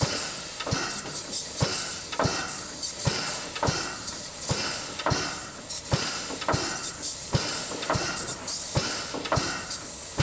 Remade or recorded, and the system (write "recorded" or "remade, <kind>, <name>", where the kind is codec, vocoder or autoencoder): recorded